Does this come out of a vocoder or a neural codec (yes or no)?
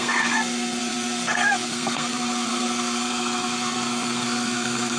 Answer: yes